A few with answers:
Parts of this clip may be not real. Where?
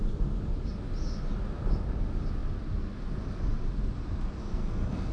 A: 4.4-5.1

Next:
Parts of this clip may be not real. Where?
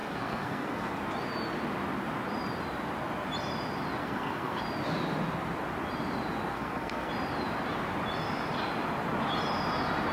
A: 0.0-0.9; 4.0-4.6; 6.5-7.1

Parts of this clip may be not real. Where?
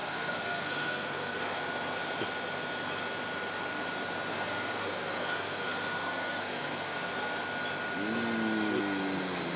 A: 0.0-1.6; 4.3-7.1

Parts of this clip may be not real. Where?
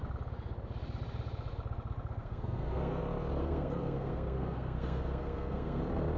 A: 2.2-3.0; 3.4-5.8